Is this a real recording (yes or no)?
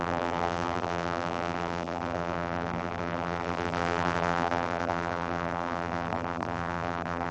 no